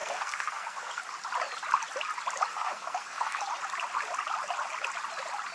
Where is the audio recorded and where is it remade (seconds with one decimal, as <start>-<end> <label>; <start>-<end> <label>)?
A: 0.0-1.0 remade; 1.0-2.5 recorded; 2.5-3.4 remade; 3.4-5.5 recorded